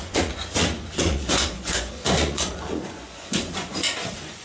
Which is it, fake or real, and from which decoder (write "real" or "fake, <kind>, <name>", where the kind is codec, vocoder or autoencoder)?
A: fake, vocoder, Vocos